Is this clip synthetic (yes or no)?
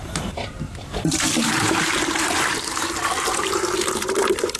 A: yes